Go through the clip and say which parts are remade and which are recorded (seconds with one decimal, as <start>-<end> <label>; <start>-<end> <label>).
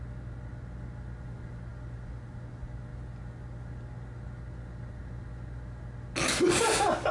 0.0-7.1 recorded